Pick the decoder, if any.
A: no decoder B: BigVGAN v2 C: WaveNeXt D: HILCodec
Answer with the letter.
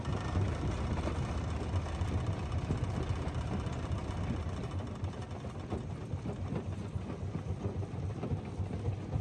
A